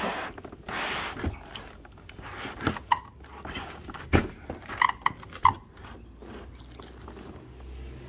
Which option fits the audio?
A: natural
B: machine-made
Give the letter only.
A